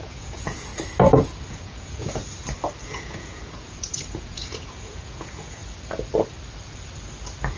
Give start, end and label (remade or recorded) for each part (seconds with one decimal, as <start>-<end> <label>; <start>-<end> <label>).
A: 0.0-0.7 remade; 0.7-1.5 recorded; 1.5-2.2 remade; 2.2-2.8 recorded; 2.8-5.6 remade; 5.6-7.6 recorded